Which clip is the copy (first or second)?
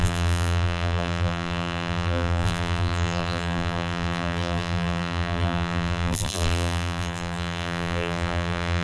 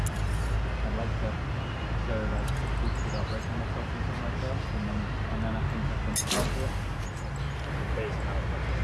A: first